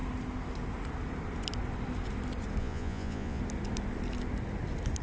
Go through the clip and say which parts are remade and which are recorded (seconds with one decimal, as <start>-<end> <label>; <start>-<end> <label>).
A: 0.0-2.6 recorded; 2.6-3.4 remade; 3.4-5.0 recorded